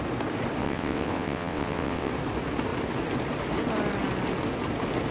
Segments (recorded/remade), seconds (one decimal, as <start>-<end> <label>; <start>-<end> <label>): 0.0-0.6 recorded; 0.6-2.1 remade; 2.1-5.1 recorded